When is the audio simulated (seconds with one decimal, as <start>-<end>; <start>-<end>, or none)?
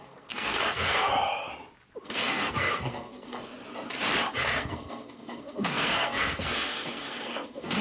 0.0-1.1; 2.0-3.6; 4.4-7.8